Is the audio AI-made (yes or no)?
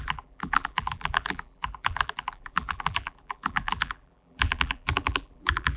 yes